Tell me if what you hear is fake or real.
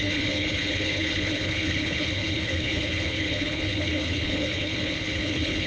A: fake